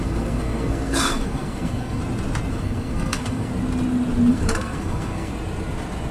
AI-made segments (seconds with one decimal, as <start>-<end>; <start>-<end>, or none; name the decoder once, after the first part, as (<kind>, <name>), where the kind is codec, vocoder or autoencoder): 0.0-2.0 (codec, SNAC); 2.5-3.5; 4.3-5.3